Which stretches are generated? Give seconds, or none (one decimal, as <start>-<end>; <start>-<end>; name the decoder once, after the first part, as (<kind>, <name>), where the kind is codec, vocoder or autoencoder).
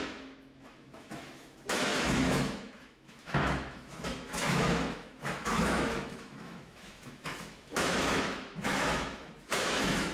0.0-10.1 (autoencoder, DAC-VAE)